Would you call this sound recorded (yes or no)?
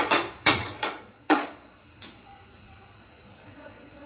no